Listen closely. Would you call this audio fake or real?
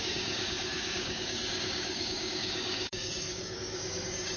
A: fake